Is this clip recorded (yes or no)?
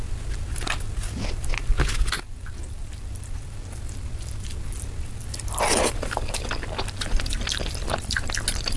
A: yes